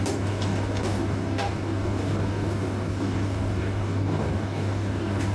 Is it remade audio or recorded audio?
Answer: remade